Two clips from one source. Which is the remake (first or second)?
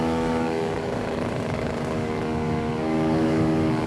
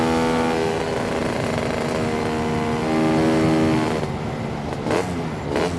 first